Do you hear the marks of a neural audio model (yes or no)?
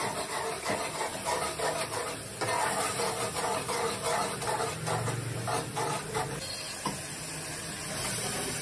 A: no